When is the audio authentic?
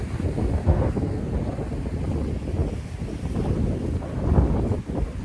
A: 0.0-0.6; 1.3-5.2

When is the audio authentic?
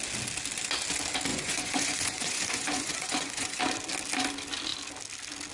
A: 0.0-1.3; 3.6-5.5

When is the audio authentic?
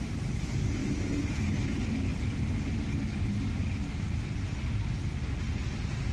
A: 0.0-6.1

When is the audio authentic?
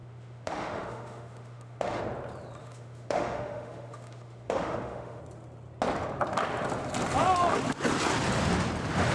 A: 2.0-2.6; 5.2-9.1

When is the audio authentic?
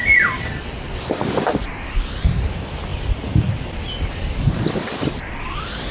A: 0.0-5.9